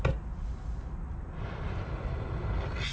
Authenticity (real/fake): real